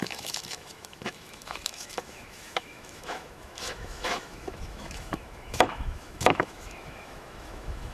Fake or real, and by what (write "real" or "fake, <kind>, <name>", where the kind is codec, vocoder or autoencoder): fake, autoencoder, DAC-VAE